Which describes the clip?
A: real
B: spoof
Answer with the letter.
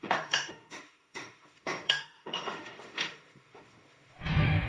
B